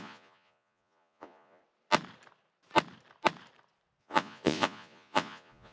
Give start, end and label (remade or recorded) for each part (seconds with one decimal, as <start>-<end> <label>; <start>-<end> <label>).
0.0-1.6 remade; 1.6-4.0 recorded; 4.0-5.7 remade